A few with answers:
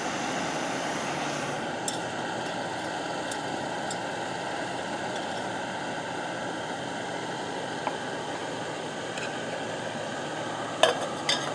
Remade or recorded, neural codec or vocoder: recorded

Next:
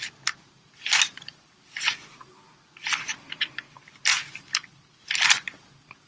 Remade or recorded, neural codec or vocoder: recorded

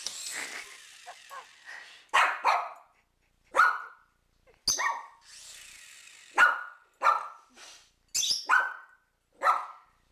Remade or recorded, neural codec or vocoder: recorded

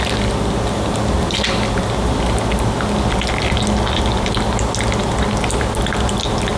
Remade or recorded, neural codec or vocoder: recorded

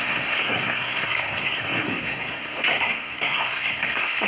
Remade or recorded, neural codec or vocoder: remade, codec, SNAC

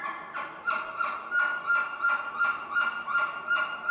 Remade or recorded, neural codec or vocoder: recorded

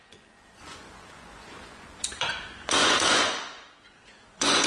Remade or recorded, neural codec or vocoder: remade, vocoder, Vocos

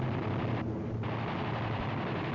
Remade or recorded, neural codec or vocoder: recorded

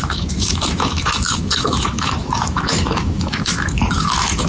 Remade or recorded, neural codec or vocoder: remade, autoencoder, DAC-VAE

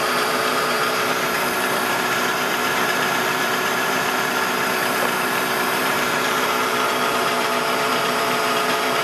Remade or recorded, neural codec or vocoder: remade, vocoder, BigVGAN v2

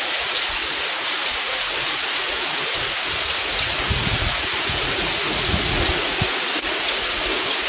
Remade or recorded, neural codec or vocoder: remade, vocoder, Vocos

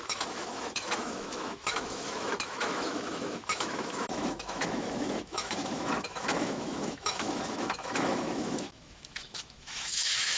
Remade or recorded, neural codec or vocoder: remade, autoencoder, DAC-VAE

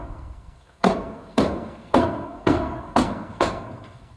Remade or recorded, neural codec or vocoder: remade, codec, SNAC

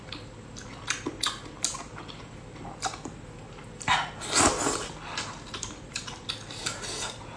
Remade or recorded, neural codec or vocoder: recorded